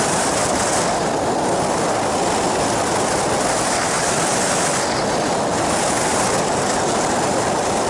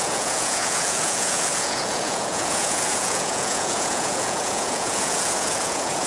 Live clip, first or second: first